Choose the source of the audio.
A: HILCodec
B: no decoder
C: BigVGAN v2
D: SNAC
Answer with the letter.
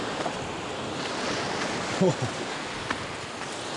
B